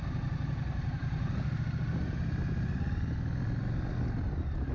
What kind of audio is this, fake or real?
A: real